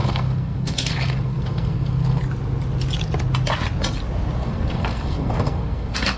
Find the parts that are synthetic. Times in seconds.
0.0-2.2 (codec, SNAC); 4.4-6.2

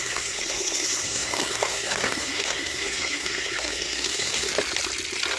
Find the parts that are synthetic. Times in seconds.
0.0-4.5 (codec, SNAC)

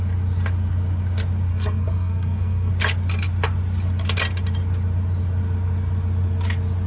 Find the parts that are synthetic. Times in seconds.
1.5-2.7 (codec, SNAC)

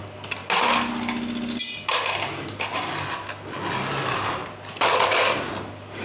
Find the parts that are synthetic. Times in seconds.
none

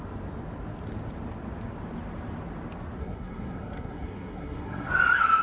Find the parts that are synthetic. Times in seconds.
3.0-4.9 (codec, SNAC)

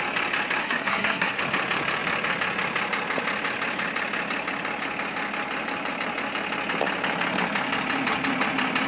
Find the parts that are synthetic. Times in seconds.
0.6-1.4 (codec, SNAC)

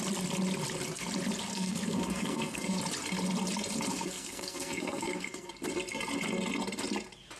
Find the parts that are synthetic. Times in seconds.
1.5-2.8 (codec, SNAC); 3.9-5.5